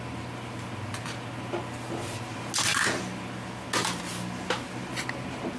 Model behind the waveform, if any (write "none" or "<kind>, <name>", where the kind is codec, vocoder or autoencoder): none